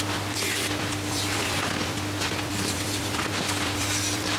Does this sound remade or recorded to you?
remade